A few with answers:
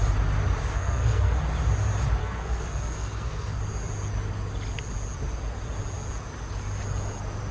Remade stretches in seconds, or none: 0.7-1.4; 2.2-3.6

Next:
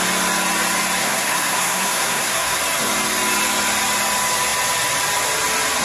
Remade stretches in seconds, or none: 1.0-2.6